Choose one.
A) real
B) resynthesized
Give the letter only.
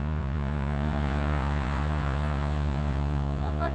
B